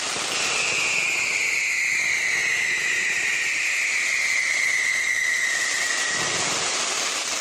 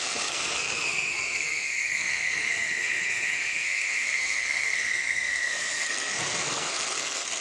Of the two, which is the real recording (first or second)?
first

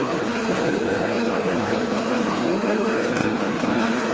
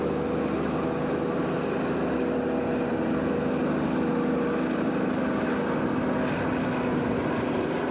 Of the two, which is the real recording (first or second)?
second